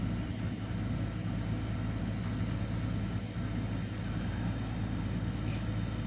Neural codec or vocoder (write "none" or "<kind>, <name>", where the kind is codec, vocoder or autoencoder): none